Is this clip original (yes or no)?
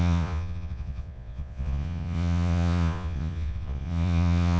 no